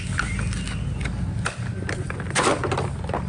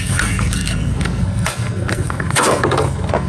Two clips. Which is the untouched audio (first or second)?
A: first